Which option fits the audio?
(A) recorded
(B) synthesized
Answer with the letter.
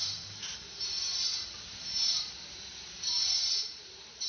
B